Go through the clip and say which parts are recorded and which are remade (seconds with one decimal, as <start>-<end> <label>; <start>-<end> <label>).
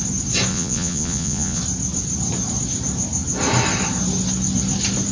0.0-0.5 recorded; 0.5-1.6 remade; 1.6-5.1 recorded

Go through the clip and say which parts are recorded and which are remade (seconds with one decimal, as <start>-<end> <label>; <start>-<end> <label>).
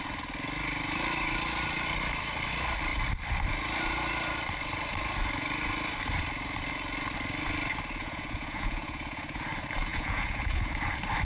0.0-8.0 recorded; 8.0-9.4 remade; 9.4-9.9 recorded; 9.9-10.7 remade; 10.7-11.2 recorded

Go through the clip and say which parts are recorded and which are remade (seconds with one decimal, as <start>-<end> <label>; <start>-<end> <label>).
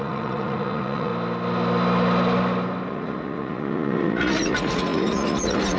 0.0-1.1 remade; 1.1-2.9 recorded; 2.9-5.8 remade